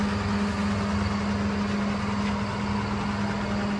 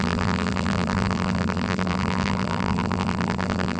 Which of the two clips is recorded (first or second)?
first